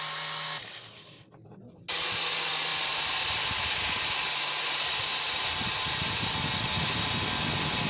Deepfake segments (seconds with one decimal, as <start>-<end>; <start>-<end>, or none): 2.7-6.5